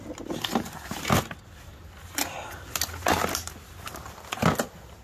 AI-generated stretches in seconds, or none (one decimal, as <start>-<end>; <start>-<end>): none